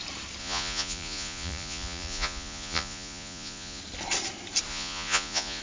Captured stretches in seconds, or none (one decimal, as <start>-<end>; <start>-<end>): 0.0-0.4; 3.8-4.7